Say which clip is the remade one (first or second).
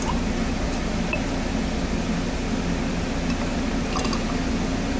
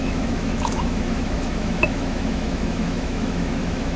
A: second